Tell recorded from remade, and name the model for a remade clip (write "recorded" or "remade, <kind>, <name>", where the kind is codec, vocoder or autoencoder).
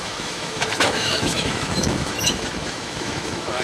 remade, autoencoder, DAC-VAE